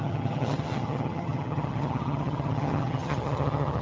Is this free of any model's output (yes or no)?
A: no